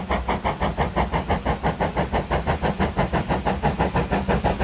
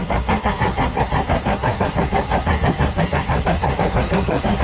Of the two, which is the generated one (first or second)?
second